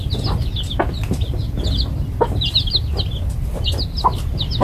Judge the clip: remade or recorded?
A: recorded